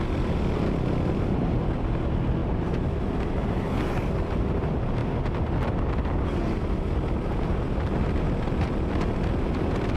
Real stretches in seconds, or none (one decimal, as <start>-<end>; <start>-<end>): 0.0-10.0